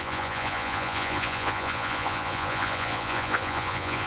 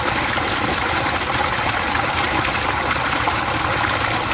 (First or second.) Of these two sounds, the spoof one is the first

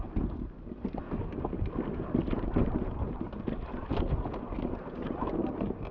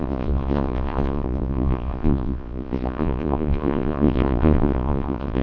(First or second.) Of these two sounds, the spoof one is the second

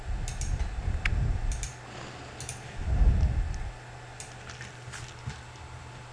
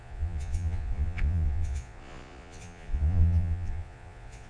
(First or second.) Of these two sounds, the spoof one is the second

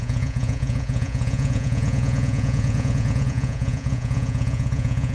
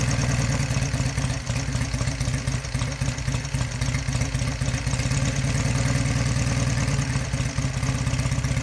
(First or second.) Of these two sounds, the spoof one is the first